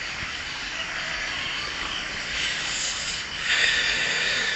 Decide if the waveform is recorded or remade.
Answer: remade